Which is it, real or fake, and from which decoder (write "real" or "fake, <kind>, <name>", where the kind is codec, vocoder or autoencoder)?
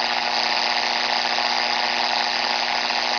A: real